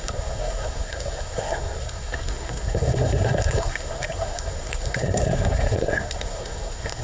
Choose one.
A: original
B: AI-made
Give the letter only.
B